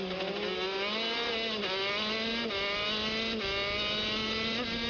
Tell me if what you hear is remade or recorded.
recorded